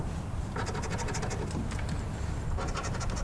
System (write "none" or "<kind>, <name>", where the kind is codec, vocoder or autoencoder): none